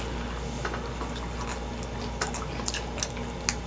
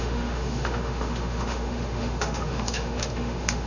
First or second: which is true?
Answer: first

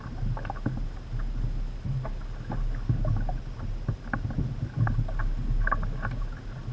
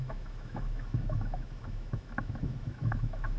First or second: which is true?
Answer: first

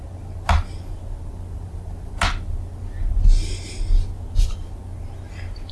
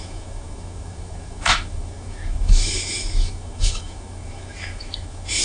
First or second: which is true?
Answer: first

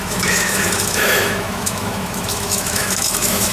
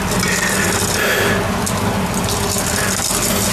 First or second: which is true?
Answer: second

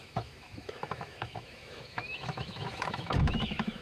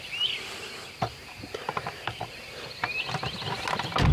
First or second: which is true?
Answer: second